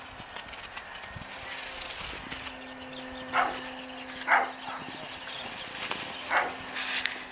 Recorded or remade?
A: recorded